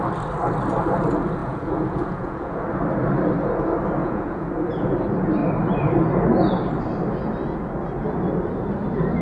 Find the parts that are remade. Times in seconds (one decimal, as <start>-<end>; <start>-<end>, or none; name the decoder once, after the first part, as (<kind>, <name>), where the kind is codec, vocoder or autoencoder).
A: 1.4-2.6 (vocoder, Vocos); 4.0-4.5